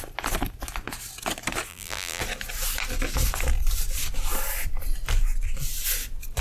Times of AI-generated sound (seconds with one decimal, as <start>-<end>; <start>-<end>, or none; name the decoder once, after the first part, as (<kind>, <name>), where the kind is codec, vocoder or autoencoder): 1.7-2.2 (vocoder, BigVGAN v2)